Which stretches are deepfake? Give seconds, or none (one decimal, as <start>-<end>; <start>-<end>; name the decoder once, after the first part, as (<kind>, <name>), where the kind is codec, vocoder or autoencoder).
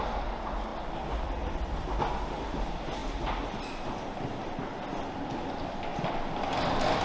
none